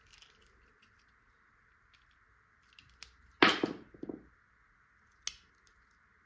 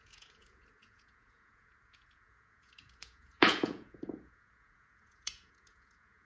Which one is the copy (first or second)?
second